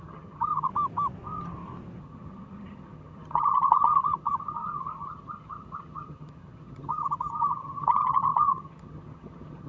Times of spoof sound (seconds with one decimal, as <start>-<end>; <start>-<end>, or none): 0.0-0.7; 2.0-9.7